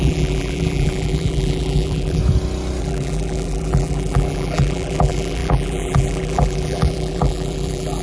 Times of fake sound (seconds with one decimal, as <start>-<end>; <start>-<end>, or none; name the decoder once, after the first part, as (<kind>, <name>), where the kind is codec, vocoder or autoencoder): 0.0-2.2 (vocoder, BigVGAN v2); 2.8-8.0

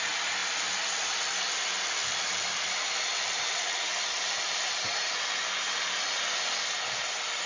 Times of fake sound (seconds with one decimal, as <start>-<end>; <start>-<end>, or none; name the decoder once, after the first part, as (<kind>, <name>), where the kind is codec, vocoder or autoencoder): 0.4-1.4 (vocoder, BigVGAN v2); 2.0-4.5